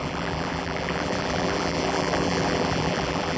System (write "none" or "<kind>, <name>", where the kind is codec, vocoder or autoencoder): vocoder, BigVGAN v2